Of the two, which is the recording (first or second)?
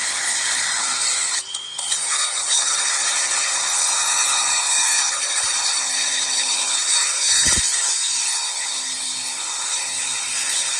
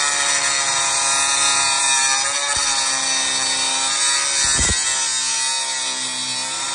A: second